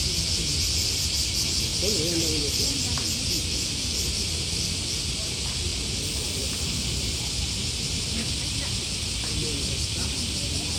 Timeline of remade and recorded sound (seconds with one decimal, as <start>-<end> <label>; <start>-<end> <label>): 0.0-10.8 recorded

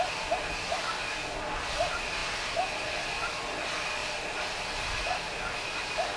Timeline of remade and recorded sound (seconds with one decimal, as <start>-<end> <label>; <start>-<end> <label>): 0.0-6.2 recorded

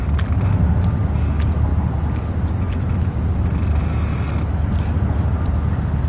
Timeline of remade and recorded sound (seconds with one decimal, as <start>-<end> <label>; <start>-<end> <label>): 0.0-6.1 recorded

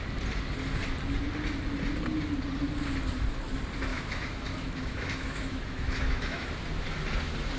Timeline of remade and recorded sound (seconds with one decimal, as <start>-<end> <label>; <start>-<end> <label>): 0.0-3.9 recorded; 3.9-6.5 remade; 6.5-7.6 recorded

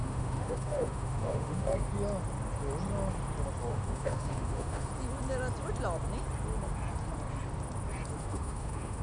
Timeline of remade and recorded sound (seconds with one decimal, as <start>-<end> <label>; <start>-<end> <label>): 0.0-1.9 remade; 1.9-3.7 recorded; 3.7-4.9 remade; 4.9-8.2 recorded; 8.2-9.0 remade